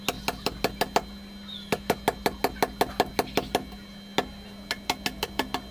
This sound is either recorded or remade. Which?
recorded